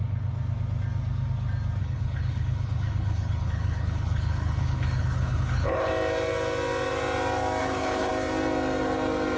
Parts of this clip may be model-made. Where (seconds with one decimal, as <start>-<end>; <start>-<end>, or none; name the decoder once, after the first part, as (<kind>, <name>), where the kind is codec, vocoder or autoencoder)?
1.8-5.9 (codec, HILCodec); 7.6-8.1